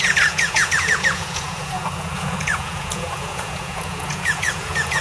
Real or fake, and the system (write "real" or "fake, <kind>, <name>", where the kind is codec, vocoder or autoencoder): fake, vocoder, Vocos